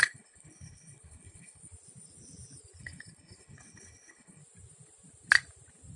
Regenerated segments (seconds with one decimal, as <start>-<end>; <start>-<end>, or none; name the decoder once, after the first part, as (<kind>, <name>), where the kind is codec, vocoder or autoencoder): 0.0-1.6 (codec, HILCodec); 2.8-4.4